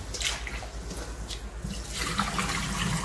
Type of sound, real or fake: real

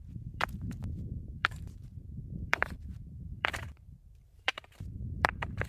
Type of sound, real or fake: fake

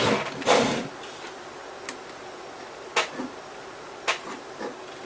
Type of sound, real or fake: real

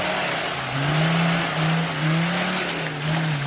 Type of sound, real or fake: real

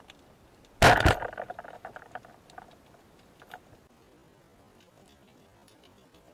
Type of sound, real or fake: real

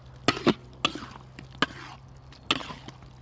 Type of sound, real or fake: real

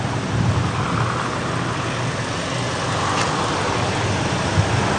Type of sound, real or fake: real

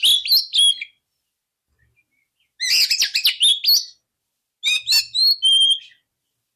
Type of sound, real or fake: real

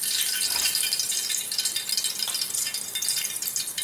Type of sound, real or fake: real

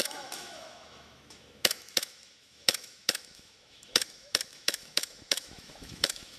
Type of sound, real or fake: fake